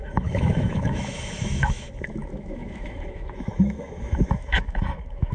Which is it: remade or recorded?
remade